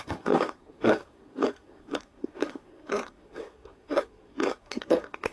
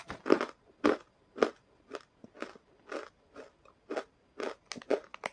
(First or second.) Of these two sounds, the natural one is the second